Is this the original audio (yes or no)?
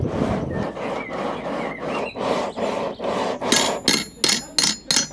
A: yes